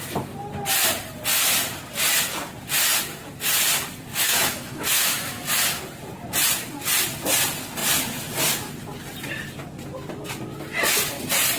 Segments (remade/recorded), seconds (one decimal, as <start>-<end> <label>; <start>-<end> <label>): 0.0-4.1 recorded; 4.1-5.8 remade; 5.8-11.6 recorded